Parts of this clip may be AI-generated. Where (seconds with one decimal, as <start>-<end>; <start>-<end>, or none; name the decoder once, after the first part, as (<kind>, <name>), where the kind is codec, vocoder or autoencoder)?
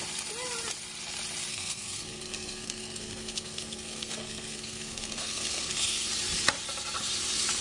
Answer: 1.5-6.1 (codec, SNAC)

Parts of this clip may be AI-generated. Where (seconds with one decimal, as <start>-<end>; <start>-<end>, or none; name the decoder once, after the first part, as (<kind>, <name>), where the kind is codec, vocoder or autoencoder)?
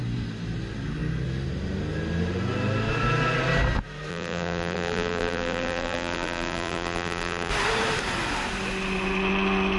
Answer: 4.1-7.5 (vocoder, BigVGAN v2)